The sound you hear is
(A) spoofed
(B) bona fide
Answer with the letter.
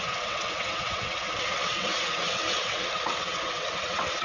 A